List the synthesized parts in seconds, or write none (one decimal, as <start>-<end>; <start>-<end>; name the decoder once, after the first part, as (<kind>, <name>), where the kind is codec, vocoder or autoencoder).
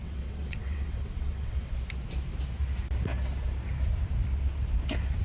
0.0-1.7 (vocoder, WaveNeXt)